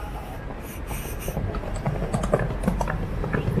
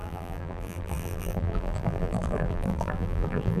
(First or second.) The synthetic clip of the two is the second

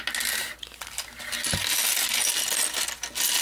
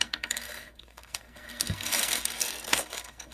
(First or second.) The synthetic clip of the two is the second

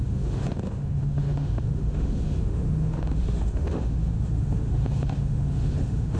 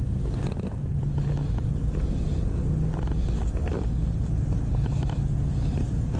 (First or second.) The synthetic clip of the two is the first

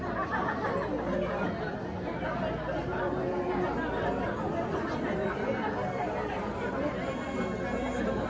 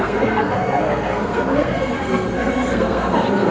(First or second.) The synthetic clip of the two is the second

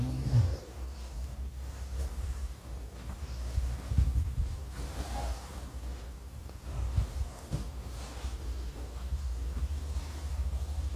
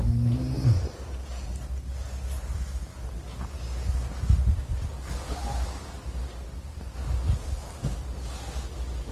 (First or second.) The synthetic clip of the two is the first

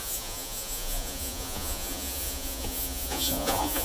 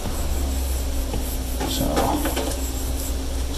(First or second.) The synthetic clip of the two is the first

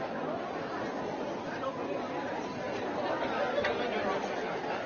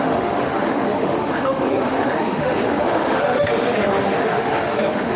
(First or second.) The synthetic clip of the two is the second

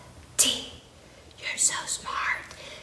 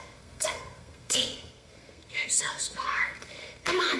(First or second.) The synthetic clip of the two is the second